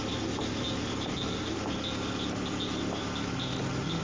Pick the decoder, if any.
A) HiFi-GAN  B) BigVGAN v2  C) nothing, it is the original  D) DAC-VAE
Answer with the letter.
C